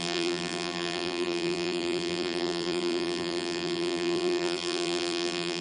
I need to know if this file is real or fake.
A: fake